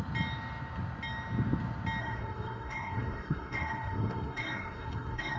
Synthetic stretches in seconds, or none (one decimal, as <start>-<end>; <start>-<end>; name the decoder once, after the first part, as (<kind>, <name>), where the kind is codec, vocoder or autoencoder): 2.0-5.4 (codec, SNAC)